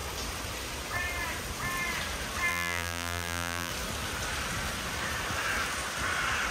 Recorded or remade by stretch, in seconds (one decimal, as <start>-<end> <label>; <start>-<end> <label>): 0.0-2.5 recorded; 2.5-3.7 remade; 3.7-6.5 recorded

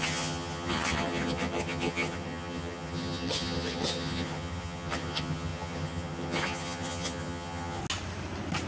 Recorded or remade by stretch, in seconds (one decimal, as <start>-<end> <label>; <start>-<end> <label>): 0.0-7.8 remade; 7.8-8.7 recorded

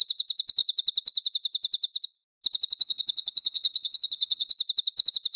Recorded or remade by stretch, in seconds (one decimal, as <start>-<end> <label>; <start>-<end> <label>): 0.0-2.8 recorded; 2.8-4.5 remade; 4.5-5.4 recorded

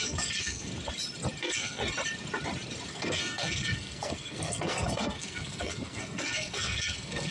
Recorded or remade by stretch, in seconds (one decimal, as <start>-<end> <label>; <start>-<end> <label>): 0.0-0.7 remade; 0.7-1.4 recorded; 1.4-1.8 remade; 1.8-2.9 recorded; 2.9-7.3 remade

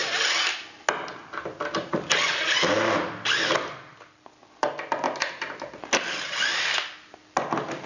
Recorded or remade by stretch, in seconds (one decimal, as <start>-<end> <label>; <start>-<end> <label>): 0.0-7.9 recorded

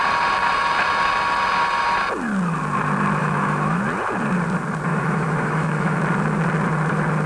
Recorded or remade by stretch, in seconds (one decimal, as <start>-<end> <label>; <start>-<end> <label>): 0.0-3.2 recorded; 3.2-3.8 remade; 3.8-4.9 recorded; 4.9-6.0 remade; 6.0-7.3 recorded

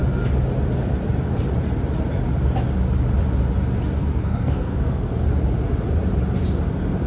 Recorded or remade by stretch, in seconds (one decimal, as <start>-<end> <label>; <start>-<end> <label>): 0.0-4.1 recorded; 4.1-5.2 remade; 5.2-7.1 recorded